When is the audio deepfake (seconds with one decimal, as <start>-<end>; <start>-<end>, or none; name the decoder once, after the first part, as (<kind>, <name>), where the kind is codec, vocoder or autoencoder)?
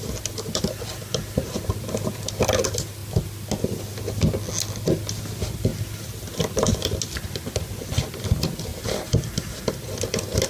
none